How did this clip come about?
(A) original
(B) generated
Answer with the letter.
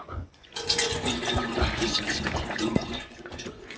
B